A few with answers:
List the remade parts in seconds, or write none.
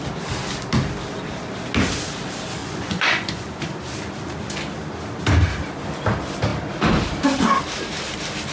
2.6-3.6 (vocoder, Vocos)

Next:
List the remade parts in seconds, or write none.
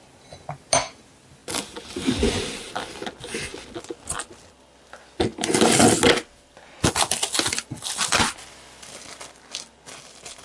none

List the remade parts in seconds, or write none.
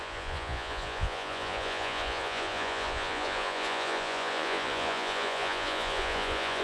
0.0-6.6 (vocoder, Vocos)